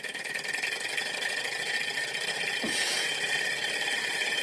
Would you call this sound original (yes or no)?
yes